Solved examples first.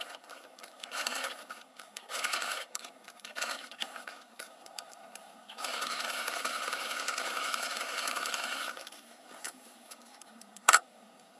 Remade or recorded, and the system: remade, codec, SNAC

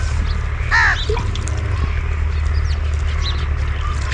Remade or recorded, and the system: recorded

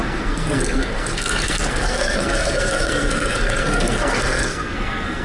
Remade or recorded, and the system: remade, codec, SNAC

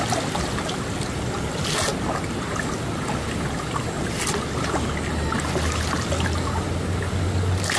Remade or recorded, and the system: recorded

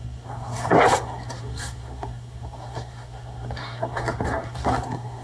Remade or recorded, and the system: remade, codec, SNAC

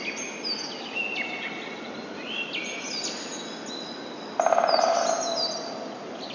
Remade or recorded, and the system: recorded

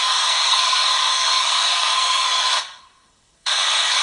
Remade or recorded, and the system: remade, codec, SNAC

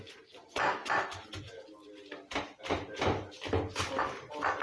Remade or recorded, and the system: recorded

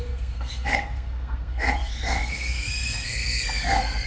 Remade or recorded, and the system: remade, codec, SNAC